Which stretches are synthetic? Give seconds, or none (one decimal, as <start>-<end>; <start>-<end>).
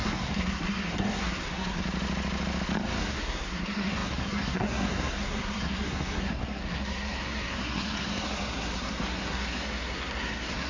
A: 0.0-1.8; 3.0-10.7